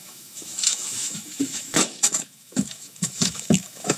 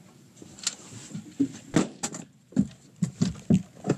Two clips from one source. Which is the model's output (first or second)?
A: first